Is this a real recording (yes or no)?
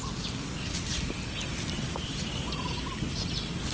yes